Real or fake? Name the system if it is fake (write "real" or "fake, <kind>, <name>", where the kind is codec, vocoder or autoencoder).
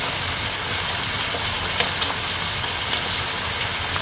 real